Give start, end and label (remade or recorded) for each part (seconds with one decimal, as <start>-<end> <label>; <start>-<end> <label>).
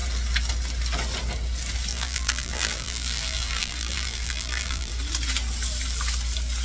0.0-1.9 recorded; 1.9-4.9 remade; 4.9-6.6 recorded